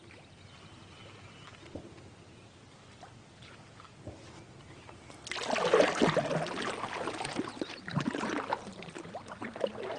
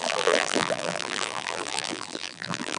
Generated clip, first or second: second